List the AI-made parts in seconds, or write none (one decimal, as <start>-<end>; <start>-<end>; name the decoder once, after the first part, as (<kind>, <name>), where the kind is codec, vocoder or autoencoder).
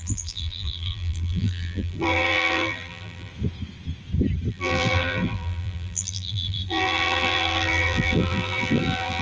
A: 0.0-3.3 (vocoder, BigVGAN v2); 4.5-9.2